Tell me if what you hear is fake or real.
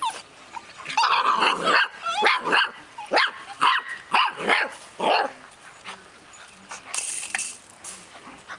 real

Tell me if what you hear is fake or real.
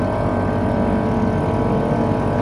real